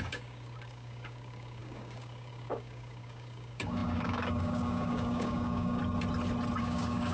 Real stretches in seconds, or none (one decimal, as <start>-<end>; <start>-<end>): 5.8-6.6